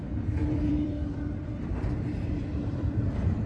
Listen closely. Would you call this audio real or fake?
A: fake